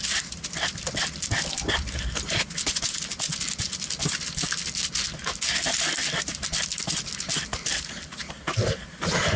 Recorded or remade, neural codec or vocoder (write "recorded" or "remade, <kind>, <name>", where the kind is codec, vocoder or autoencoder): recorded